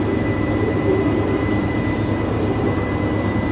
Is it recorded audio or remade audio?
remade